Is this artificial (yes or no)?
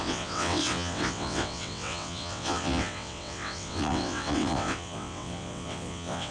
yes